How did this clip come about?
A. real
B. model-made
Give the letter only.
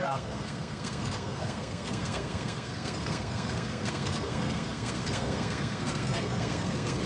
B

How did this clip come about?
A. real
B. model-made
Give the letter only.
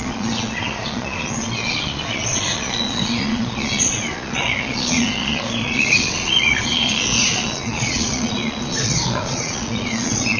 B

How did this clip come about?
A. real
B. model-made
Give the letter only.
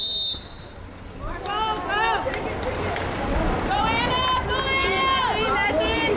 A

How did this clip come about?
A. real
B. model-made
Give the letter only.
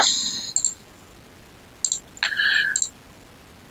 A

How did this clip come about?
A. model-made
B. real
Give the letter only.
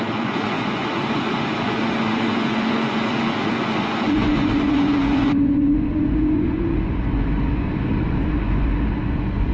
A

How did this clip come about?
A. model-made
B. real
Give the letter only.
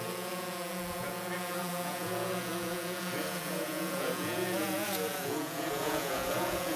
A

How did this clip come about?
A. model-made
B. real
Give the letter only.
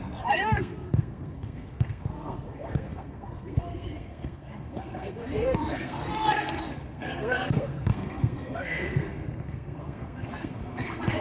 A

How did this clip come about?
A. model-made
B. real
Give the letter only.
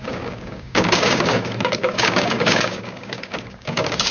A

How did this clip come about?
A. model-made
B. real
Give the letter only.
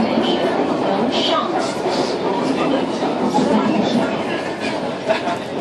B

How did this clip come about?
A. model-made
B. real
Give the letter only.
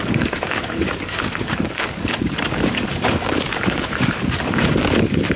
A